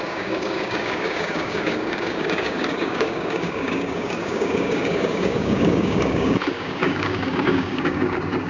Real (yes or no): no